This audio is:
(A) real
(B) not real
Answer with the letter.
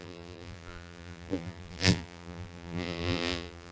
B